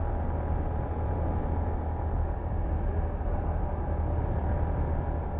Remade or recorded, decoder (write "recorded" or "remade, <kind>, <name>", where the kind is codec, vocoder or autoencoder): recorded